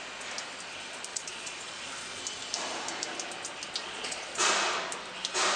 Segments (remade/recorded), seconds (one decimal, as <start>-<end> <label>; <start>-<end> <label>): 0.0-1.1 recorded; 1.1-2.2 remade; 2.2-3.8 recorded; 3.8-4.5 remade; 4.5-5.6 recorded